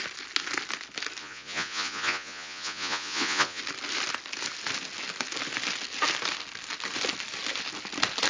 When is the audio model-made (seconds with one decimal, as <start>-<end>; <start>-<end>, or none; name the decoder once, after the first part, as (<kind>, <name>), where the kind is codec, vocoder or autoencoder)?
1.2-3.6 (vocoder, Vocos)